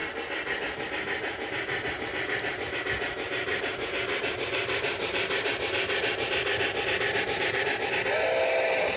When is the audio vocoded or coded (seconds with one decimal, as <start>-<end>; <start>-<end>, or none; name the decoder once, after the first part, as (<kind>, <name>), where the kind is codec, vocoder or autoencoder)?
0.0-2.8 (vocoder, BigVGAN v2); 3.5-7.6